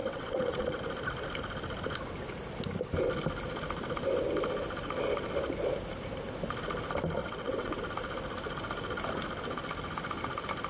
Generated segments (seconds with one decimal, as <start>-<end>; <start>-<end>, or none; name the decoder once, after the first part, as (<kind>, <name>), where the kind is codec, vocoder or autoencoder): 0.0-0.8 (vocoder, WaveNeXt); 7.2-7.8